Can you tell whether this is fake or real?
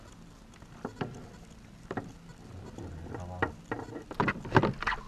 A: real